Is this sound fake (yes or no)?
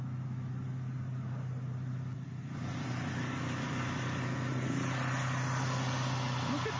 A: no